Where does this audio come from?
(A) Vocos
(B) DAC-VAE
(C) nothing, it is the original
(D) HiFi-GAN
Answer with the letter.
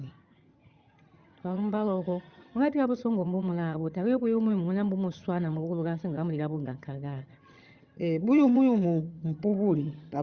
D